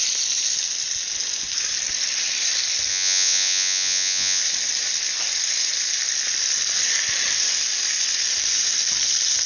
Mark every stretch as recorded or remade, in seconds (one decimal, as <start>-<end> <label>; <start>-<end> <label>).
0.0-2.9 recorded; 2.9-4.4 remade; 4.4-9.5 recorded